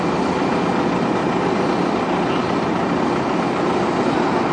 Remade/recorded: recorded